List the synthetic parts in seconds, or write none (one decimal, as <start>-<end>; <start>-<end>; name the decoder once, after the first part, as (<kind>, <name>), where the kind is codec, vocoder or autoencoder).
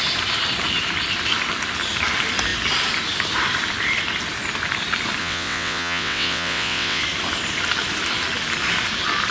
5.2-7.0 (vocoder, WaveNeXt)